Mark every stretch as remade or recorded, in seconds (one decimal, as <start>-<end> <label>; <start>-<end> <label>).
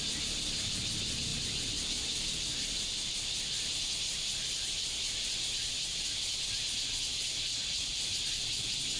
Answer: 0.0-7.5 recorded; 7.5-8.0 remade; 8.0-9.0 recorded